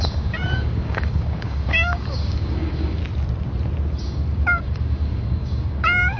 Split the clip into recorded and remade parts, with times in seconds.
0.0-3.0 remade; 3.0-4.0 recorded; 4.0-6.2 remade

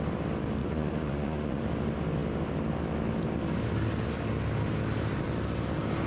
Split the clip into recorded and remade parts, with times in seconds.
0.0-0.6 recorded; 0.6-1.6 remade; 1.6-6.1 recorded

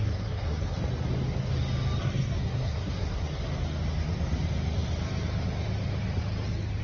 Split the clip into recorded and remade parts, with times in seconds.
0.0-0.8 remade; 0.8-2.0 recorded; 2.0-3.4 remade; 3.4-6.8 recorded

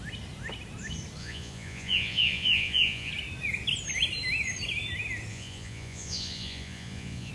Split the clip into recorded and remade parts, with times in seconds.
0.0-1.2 recorded; 1.2-3.1 remade; 3.1-5.3 recorded; 5.3-7.3 remade

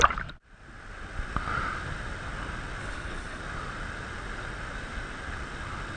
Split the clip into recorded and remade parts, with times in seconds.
0.0-2.8 recorded; 2.8-3.4 remade; 3.4-6.0 recorded

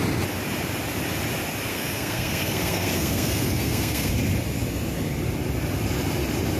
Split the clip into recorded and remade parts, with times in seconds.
0.0-1.7 recorded; 1.7-4.1 remade; 4.1-6.6 recorded